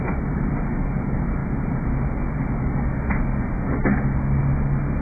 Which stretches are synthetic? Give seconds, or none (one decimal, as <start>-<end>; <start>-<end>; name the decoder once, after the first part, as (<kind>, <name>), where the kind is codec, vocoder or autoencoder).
none